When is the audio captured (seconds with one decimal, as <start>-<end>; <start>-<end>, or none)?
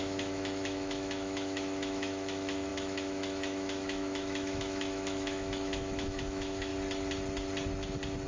6.7-8.3